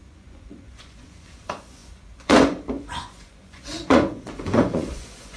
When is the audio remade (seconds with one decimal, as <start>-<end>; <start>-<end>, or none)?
0.0-5.4